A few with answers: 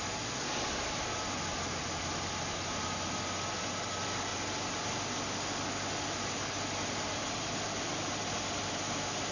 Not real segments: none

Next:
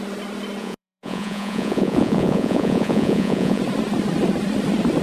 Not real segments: 0.6-3.6 (vocoder, Vocos)

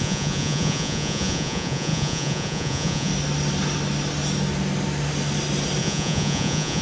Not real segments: 0.0-3.1 (vocoder, Vocos); 5.8-6.8

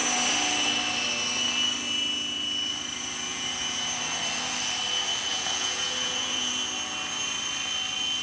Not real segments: 3.3-3.9 (vocoder, Vocos); 5.3-6.5

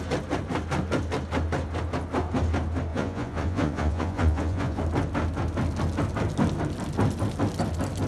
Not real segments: 2.9-4.8 (vocoder, Vocos)

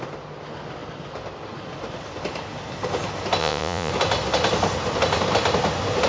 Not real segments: 3.4-3.9 (vocoder, Vocos)